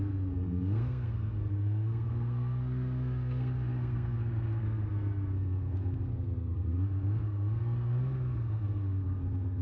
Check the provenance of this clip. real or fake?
fake